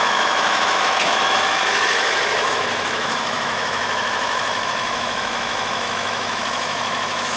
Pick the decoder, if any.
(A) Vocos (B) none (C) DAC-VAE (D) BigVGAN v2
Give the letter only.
C